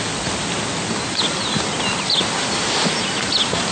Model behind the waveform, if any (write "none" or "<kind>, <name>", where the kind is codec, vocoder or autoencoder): none